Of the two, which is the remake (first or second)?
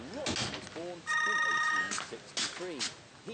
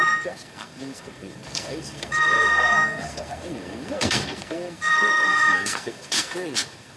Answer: second